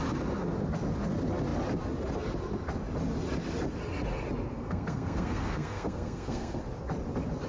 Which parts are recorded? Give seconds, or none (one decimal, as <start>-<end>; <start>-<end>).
0.0-4.5; 6.6-7.5